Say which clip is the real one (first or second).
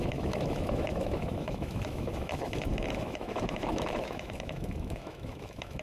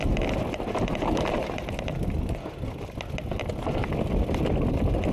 second